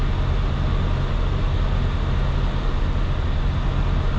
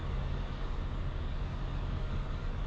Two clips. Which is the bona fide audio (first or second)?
first